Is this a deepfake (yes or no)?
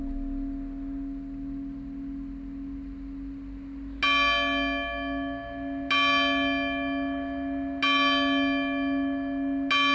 no